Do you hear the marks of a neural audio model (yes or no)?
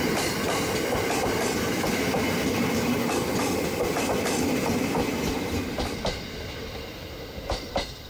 no